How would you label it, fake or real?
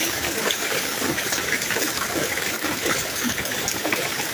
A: fake